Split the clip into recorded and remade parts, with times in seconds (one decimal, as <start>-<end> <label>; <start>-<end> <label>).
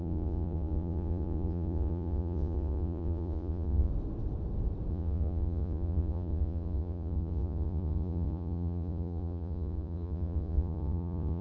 0.0-3.9 remade; 3.9-4.9 recorded; 4.9-11.4 remade